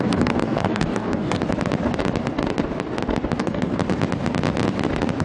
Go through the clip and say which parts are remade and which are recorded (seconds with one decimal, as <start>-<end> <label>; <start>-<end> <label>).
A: 0.0-1.4 remade; 1.4-3.4 recorded; 3.4-3.8 remade; 3.8-5.2 recorded